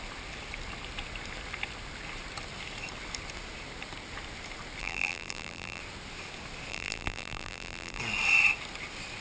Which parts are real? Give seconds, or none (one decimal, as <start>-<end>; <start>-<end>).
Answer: 0.0-4.8; 5.8-6.7; 8.0-9.2